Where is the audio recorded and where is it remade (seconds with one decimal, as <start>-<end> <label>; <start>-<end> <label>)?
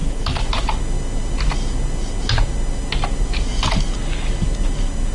0.0-5.1 recorded